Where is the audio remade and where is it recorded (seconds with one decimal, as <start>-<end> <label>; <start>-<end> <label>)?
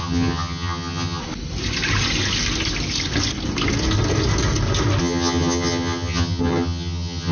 0.0-1.2 remade; 1.2-5.0 recorded; 5.0-7.3 remade